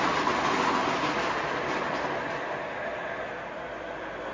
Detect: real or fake real